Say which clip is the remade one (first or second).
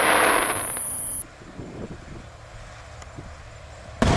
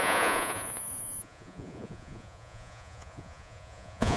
second